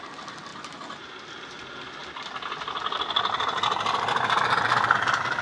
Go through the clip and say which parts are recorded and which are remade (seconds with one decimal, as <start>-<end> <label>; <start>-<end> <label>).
0.0-5.4 recorded